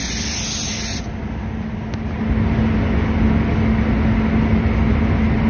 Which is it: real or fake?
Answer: real